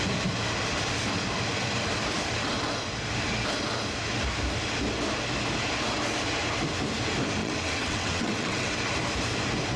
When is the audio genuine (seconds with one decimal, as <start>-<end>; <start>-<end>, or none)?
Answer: 0.0-7.4; 8.8-9.8